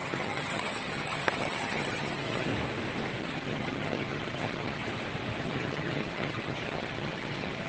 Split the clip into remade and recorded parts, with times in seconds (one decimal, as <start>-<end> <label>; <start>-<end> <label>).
0.0-2.5 remade; 2.5-3.2 recorded; 3.2-4.8 remade; 4.8-5.4 recorded; 5.4-7.7 remade